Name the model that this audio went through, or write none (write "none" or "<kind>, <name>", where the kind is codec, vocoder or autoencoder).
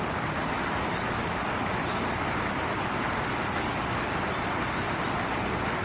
none